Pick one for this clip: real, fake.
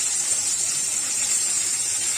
fake